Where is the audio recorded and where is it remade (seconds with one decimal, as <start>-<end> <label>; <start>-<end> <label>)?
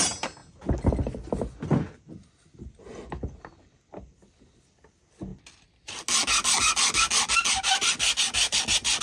0.0-9.0 recorded